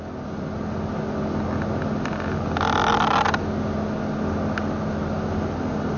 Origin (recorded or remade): recorded